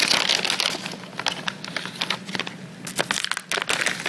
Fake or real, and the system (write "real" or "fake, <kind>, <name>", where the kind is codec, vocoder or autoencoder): real